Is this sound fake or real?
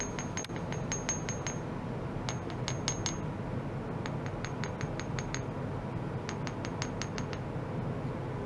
real